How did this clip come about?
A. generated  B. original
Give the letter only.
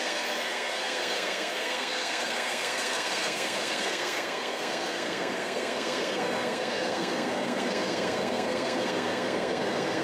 A